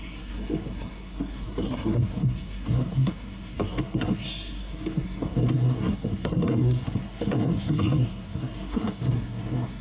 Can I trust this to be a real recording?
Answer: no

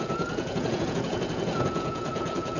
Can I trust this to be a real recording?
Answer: no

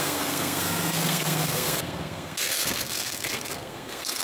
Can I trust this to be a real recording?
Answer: no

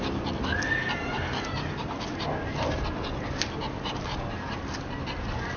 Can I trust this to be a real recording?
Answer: yes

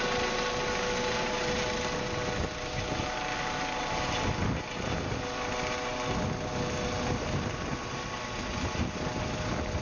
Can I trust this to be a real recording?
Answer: yes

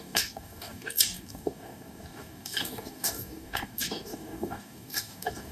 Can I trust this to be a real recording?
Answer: no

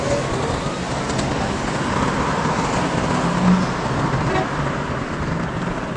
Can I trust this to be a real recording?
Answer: yes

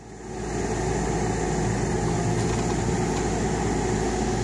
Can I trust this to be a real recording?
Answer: yes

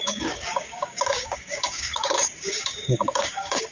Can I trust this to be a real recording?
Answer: no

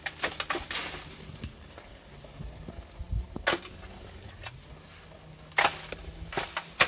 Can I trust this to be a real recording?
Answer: yes